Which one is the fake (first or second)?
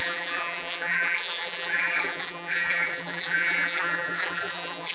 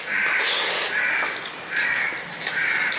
first